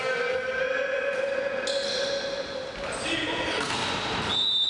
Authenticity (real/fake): real